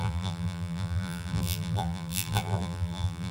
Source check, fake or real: fake